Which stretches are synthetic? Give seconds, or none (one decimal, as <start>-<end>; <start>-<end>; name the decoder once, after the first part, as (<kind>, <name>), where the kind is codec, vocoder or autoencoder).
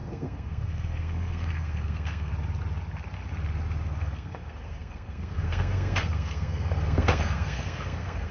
0.0-2.3 (codec, SNAC); 4.0-8.3